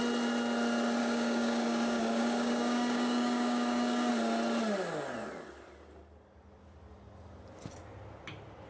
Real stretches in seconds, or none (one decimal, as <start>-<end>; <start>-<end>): 0.0-1.0; 4.1-8.7